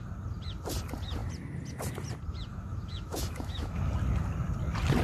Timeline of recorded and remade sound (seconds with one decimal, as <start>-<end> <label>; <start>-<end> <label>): 0.0-2.5 recorded; 2.5-3.8 remade; 3.8-5.0 recorded